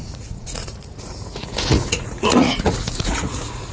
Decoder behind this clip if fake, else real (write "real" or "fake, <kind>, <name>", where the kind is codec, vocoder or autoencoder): fake, vocoder, Vocos